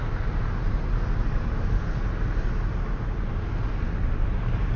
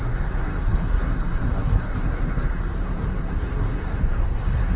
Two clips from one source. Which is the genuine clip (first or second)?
first